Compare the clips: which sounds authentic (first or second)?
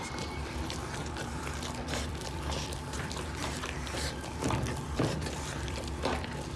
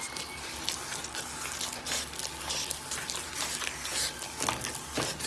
second